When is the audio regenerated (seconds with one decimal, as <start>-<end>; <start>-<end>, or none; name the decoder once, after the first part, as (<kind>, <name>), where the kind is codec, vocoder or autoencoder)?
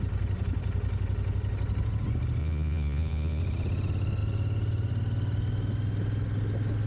2.4-3.4 (vocoder, Vocos)